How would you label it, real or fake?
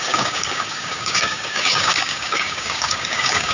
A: fake